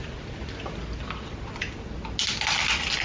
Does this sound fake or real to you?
real